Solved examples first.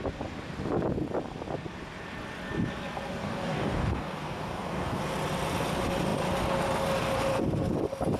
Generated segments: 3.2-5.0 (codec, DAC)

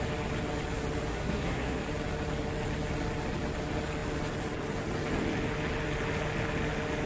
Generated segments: 1.1-1.8 (codec, SNAC)

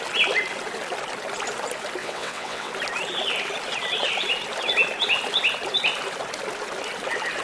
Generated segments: 2.0-2.7 (vocoder, WaveNeXt)

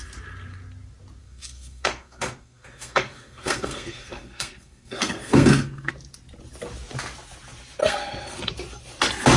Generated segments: 1.2-5.9 (codec, SNAC); 7.8-8.5

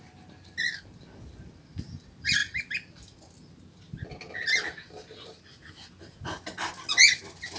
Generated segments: none

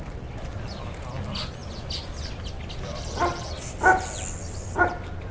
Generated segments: none

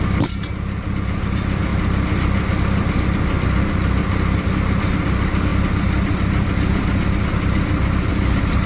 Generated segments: none